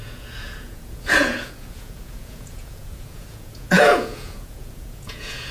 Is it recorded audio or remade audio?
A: remade